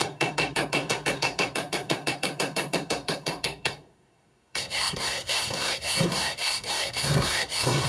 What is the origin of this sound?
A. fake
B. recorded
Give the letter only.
A